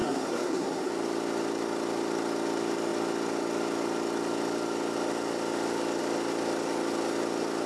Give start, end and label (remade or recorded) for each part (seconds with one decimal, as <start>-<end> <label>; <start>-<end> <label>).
0.0-0.9 remade; 0.9-7.7 recorded